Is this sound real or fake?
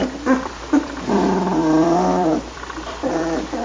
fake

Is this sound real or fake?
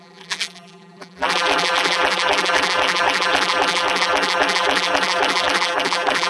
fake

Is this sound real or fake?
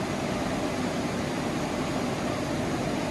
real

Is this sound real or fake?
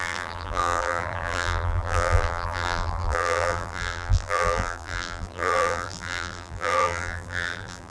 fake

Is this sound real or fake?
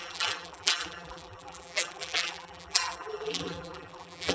fake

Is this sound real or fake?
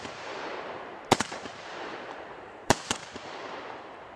fake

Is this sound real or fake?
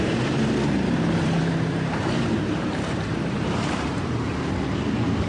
fake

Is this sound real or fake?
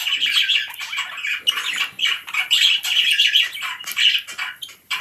real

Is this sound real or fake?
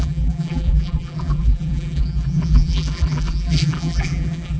fake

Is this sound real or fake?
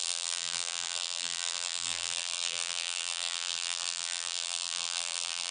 fake